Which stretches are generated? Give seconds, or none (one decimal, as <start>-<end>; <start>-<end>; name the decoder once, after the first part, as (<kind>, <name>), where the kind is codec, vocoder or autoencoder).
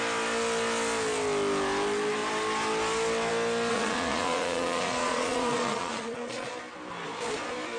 3.7-6.5 (vocoder, Vocos)